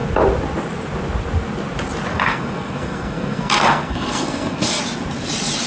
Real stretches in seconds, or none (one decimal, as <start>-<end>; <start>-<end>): 0.0-2.1; 4.8-5.7

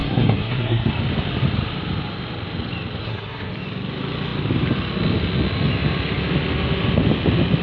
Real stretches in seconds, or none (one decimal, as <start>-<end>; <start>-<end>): 0.9-3.0; 3.5-7.6